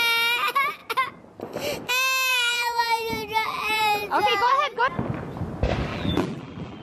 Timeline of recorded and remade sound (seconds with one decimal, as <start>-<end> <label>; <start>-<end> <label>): 0.0-2.3 recorded; 2.3-4.8 remade; 4.8-5.9 recorded; 5.9-6.8 remade